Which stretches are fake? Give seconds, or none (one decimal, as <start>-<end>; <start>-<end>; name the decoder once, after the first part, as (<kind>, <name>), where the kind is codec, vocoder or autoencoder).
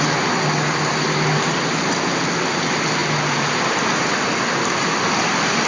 none